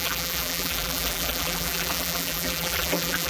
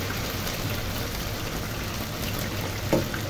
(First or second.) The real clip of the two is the second